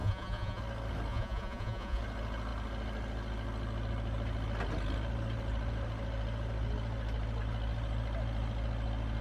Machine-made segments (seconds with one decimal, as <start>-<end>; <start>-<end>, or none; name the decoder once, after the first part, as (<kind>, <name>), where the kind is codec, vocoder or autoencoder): 0.0-0.6 (vocoder, Vocos); 1.1-2.0